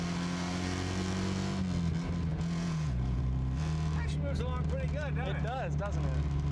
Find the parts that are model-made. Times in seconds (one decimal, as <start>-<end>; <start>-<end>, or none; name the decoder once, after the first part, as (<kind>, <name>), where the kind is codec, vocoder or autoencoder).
2.3-3.2 (vocoder, Vocos)